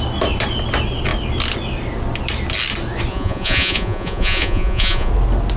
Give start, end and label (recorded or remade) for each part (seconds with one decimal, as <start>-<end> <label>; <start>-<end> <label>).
0.0-3.1 recorded; 3.1-5.1 remade; 5.1-5.6 recorded